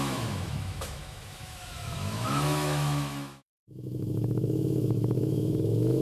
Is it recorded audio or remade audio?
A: remade